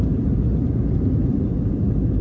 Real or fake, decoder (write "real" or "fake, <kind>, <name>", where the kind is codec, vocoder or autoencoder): real